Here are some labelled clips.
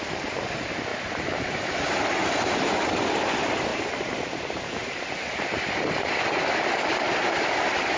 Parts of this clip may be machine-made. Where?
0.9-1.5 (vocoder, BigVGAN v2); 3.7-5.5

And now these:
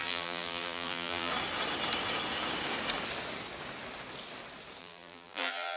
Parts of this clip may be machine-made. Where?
0.0-1.3 (vocoder, BigVGAN v2); 4.8-5.8

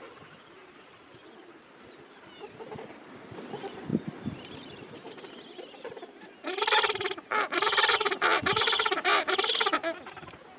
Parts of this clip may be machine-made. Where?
3.9-5.3 (vocoder, BigVGAN v2)

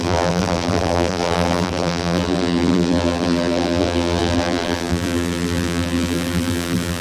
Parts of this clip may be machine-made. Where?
0.0-7.0 (vocoder, BigVGAN v2)

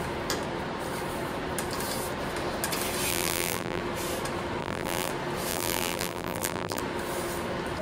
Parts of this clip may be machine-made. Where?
3.1-3.8 (vocoder, BigVGAN v2); 4.6-5.1; 5.5-6.8